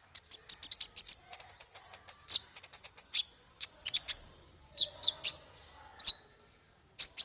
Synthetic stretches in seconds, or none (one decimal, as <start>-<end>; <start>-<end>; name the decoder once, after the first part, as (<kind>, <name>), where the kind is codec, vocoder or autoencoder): 2.7-5.6 (vocoder, Vocos)